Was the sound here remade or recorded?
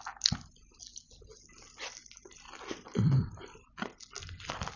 recorded